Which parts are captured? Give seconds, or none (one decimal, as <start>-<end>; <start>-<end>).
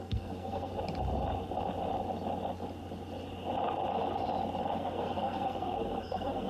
0.7-4.6